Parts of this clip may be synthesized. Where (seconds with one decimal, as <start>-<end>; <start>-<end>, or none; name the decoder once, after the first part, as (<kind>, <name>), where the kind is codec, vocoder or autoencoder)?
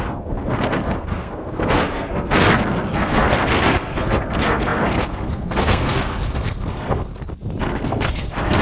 0.0-7.1 (codec, SNAC); 7.6-8.6